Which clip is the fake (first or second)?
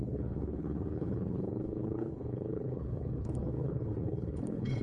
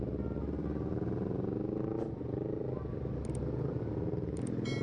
first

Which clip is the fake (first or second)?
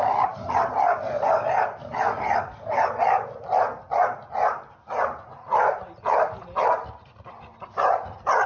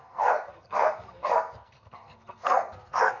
second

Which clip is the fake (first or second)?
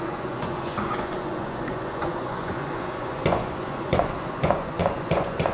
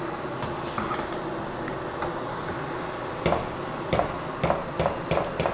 first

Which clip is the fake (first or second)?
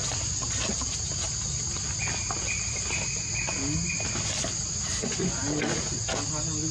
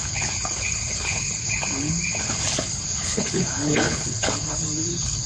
second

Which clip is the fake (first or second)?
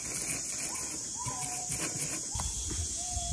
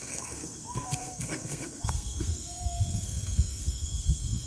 second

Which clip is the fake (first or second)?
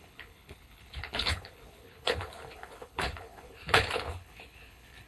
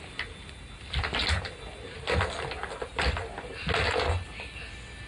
first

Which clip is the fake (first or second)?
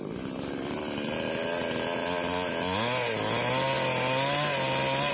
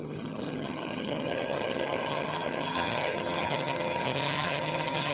second